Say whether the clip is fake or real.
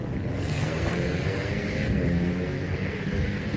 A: fake